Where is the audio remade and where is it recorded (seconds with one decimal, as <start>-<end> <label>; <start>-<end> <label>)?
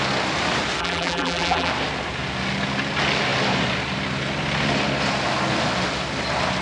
0.0-0.8 recorded; 0.8-1.7 remade; 1.7-6.6 recorded